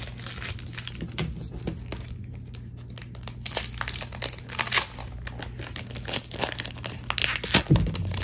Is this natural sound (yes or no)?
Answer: yes